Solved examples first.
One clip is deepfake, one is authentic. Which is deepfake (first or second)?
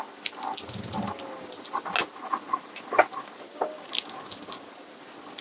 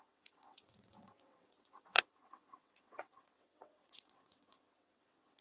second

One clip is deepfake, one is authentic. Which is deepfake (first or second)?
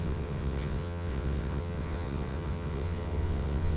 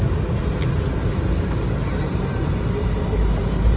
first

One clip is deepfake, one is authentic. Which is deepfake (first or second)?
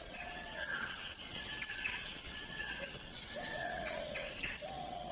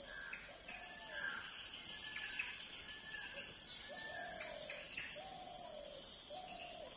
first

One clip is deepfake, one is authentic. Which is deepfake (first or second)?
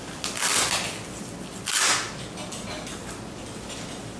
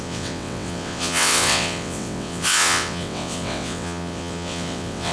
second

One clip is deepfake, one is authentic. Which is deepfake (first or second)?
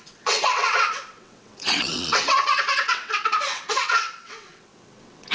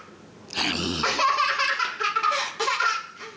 first